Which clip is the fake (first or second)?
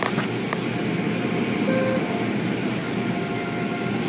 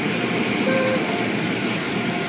second